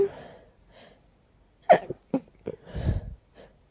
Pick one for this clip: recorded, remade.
recorded